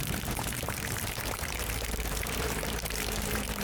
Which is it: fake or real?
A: fake